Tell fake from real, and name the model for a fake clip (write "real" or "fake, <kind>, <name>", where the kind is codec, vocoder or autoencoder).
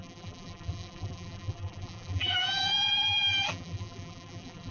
fake, vocoder, BigVGAN v2